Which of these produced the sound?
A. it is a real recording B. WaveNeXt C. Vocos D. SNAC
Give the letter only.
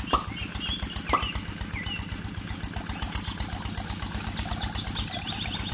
A